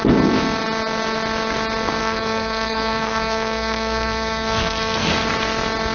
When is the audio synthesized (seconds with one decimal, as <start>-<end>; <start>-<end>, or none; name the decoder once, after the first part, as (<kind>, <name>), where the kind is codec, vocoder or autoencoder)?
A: 2.0-5.1 (codec, SNAC)